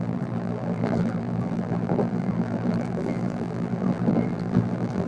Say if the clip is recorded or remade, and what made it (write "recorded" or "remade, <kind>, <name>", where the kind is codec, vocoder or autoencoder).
remade, vocoder, BigVGAN v2